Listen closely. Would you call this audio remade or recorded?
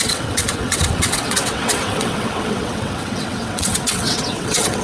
remade